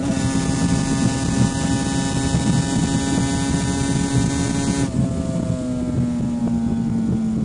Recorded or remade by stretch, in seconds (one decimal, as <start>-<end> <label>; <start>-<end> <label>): 0.0-7.4 recorded